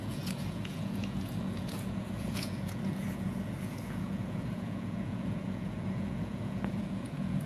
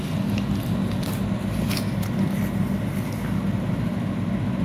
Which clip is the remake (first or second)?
first